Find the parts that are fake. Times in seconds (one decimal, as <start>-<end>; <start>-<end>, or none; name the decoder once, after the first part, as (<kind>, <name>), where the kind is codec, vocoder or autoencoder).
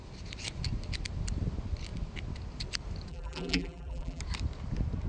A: 3.1-4.2 (vocoder, BigVGAN v2)